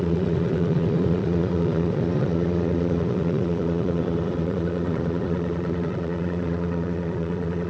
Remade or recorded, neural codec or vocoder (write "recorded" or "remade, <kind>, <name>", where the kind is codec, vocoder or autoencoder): remade, vocoder, Vocos